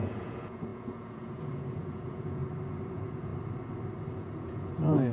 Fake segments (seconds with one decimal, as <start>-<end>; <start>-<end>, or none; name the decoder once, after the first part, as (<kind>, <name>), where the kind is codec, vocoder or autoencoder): 0.0-2.4 (vocoder, Vocos); 2.9-3.3; 4.1-5.1